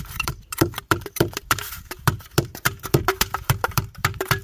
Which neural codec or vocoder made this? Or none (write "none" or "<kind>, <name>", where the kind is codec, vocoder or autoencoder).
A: vocoder, BigVGAN v2